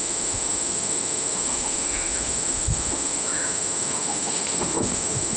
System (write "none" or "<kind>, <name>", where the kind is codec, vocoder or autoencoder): autoencoder, DAC-VAE